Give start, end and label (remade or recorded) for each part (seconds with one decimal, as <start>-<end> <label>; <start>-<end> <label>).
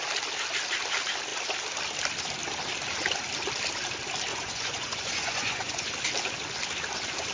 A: 0.0-4.3 recorded; 4.3-5.9 remade; 5.9-7.3 recorded